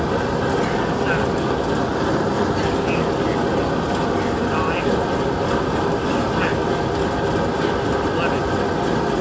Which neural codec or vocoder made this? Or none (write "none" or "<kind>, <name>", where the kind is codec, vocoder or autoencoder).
none